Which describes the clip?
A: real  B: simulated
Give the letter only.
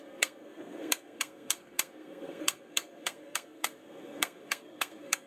B